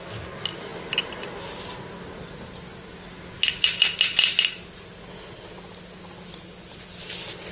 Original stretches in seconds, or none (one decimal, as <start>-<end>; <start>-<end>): 0.0-7.5